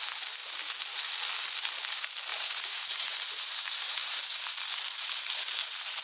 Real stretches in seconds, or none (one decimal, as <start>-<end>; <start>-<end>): 0.0-2.3; 4.2-6.0